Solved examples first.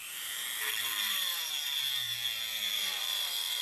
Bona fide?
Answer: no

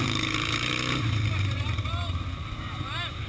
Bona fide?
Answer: no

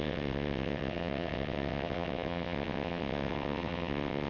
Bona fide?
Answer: no